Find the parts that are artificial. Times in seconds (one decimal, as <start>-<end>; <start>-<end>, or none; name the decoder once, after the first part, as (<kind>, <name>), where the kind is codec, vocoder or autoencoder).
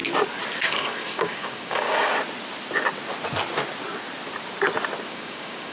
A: 0.6-2.1 (codec, DAC); 5.1-5.7